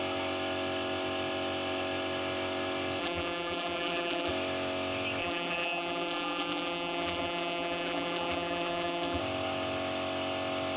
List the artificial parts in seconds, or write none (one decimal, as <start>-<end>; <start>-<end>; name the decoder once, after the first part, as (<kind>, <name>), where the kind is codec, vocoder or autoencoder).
3.0-4.3 (vocoder, BigVGAN v2); 5.2-9.2